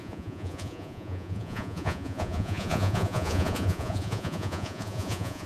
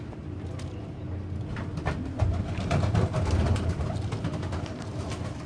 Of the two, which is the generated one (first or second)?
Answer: first